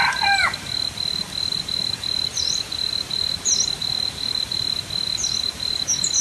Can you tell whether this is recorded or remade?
recorded